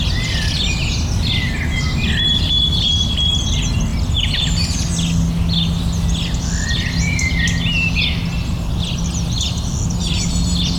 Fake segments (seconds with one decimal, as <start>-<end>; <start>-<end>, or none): none